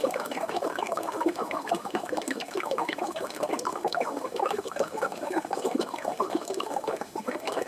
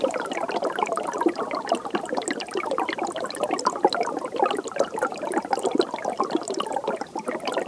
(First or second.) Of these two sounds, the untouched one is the second